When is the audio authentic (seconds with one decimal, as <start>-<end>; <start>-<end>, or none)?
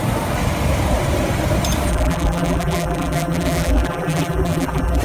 0.0-1.9